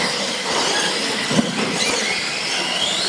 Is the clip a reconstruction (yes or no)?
no